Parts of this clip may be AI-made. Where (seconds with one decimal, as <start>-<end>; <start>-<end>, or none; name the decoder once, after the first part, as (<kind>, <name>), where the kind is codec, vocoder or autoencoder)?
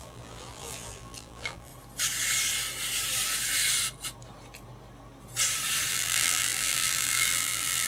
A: 0.0-1.7 (vocoder, BigVGAN v2); 5.9-7.9